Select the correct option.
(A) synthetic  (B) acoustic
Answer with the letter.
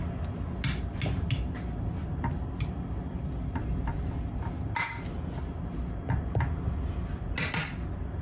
B